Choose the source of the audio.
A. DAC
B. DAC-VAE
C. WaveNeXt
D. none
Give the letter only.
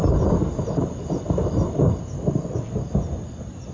D